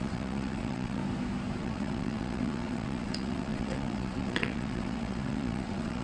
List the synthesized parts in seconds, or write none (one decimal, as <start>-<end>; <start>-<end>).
0.0-1.0; 1.6-6.0

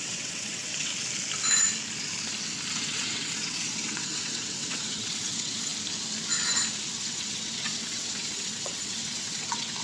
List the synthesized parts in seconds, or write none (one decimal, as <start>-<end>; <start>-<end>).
0.0-0.9; 2.7-5.7; 6.9-9.8